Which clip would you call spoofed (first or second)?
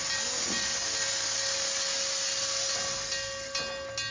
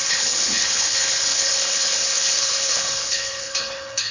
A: second